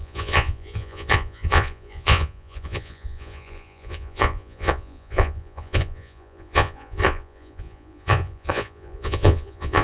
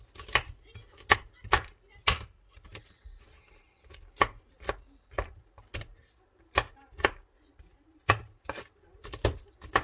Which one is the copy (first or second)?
first